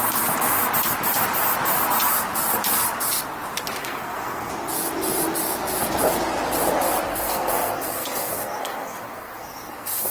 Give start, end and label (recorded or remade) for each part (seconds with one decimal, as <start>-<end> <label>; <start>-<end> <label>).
0.0-3.8 recorded; 3.8-4.5 remade; 4.5-7.1 recorded; 7.1-10.1 remade